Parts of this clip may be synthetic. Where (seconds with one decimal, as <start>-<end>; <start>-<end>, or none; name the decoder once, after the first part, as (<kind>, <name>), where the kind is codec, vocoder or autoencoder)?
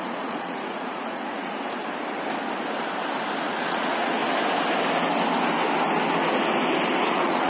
0.0-1.8 (vocoder, Vocos); 3.4-4.2; 7.1-7.5